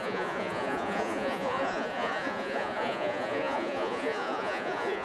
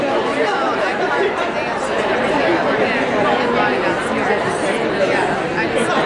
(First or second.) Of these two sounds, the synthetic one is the first